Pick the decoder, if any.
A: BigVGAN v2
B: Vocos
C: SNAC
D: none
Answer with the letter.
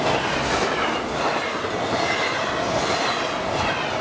D